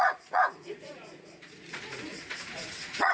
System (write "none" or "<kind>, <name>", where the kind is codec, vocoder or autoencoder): vocoder, Vocos